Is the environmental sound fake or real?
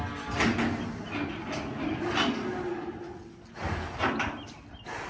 real